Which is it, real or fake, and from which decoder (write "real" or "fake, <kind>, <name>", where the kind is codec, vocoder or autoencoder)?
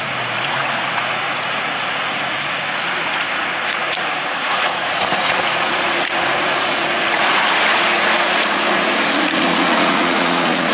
fake, vocoder, Vocos